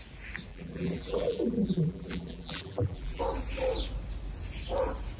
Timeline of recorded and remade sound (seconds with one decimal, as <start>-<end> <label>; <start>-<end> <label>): 0.0-0.5 recorded; 0.5-3.2 remade; 3.2-5.2 recorded